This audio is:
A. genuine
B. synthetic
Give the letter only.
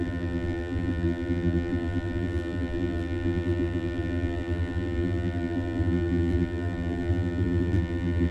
B